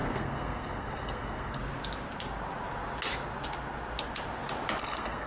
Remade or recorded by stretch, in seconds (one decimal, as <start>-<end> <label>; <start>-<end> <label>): 0.0-1.6 remade; 1.6-4.8 recorded; 4.8-5.3 remade